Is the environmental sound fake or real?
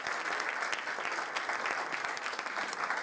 real